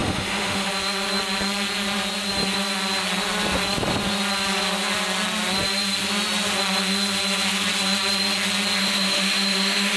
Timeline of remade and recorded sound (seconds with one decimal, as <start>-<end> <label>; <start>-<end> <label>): 0.0-0.7 remade; 0.7-8.8 recorded; 8.8-10.0 remade